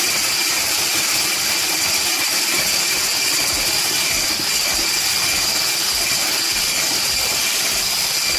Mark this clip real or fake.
real